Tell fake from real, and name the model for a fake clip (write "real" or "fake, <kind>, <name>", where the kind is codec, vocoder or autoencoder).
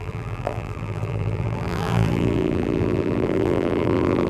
fake, vocoder, BigVGAN v2